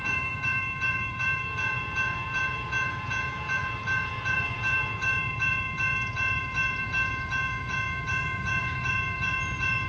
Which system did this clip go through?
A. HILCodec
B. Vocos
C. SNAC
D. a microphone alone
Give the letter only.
B